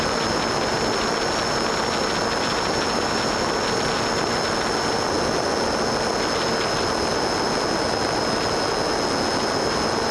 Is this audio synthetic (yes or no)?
no